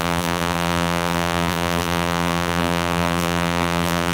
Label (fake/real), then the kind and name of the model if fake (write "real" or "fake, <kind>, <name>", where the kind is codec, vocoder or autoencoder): fake, vocoder, BigVGAN v2